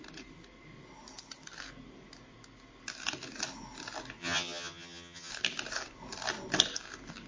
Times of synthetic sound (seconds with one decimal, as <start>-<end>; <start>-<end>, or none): 4.2-5.3